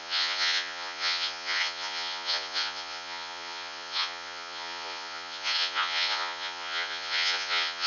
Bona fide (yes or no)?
no